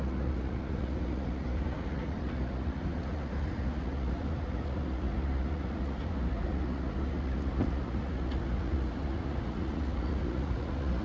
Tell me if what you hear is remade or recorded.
remade